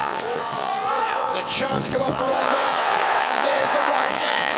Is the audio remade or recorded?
remade